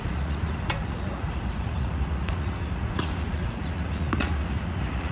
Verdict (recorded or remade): remade